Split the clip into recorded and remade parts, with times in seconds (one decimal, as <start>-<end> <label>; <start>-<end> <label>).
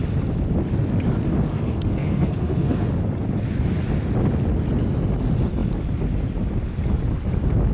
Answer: 0.0-1.5 recorded; 1.5-2.9 remade; 2.9-7.7 recorded